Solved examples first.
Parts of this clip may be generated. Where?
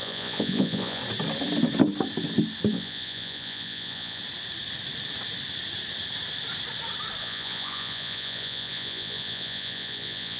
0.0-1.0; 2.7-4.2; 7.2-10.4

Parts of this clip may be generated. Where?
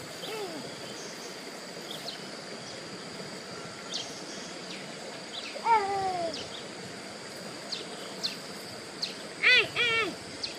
4.6-6.3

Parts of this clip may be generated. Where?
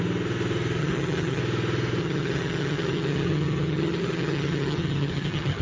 0.8-1.4; 2.0-5.6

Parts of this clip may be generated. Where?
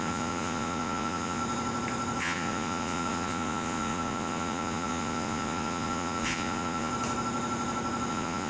0.0-1.4; 2.2-6.9; 8.1-8.5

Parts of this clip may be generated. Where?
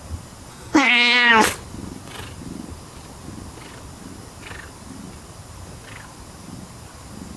0.5-1.3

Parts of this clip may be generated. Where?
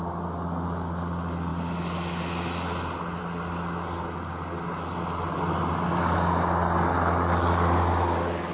none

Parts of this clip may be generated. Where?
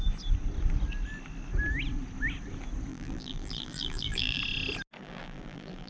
2.9-4.4; 5.0-5.9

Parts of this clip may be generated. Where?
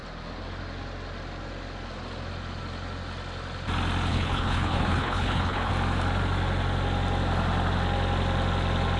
4.1-5.7